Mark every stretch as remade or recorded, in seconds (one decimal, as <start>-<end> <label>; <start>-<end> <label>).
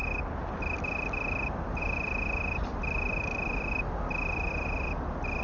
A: 0.0-1.8 recorded; 1.8-2.8 remade; 2.8-4.5 recorded; 4.5-5.4 remade